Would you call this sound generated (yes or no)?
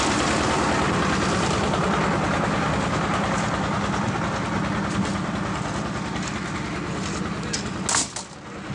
no